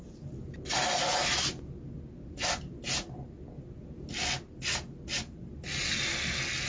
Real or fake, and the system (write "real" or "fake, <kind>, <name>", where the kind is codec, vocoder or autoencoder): real